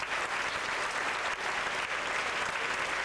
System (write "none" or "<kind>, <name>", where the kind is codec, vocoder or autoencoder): none